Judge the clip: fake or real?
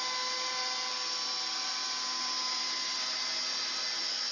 real